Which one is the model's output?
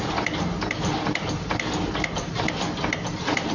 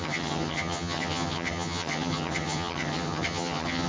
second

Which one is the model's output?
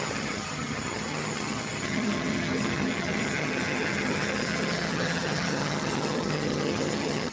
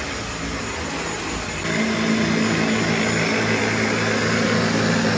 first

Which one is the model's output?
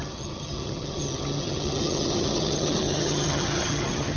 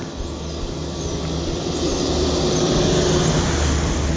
first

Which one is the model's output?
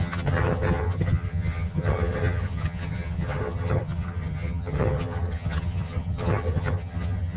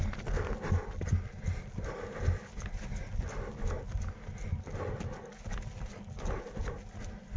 first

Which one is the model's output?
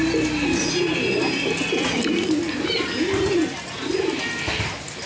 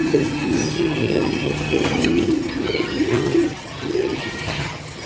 second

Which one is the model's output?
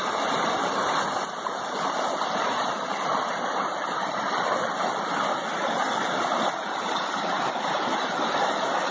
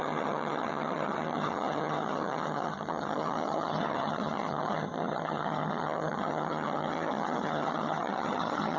second